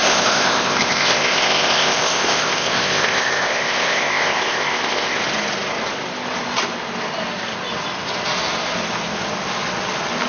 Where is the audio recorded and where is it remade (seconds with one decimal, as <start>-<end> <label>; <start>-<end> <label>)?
0.0-5.2 remade; 5.2-10.3 recorded